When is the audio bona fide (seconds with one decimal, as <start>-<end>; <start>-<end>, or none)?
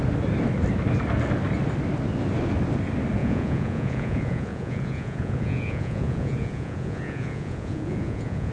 0.0-3.2